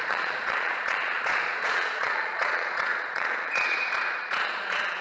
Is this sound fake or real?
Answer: fake